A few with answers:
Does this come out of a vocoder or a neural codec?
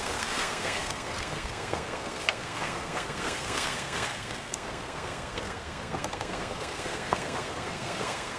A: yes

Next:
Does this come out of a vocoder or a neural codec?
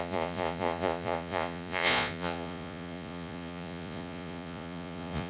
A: yes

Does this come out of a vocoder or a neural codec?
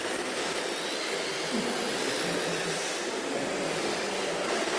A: no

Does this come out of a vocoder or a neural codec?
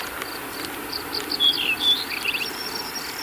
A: no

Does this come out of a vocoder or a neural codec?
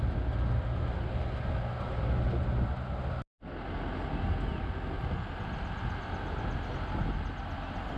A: no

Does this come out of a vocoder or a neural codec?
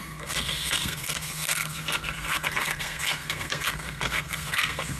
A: yes